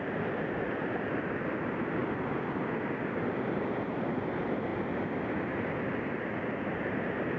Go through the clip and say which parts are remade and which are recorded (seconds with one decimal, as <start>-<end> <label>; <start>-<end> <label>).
0.0-7.4 recorded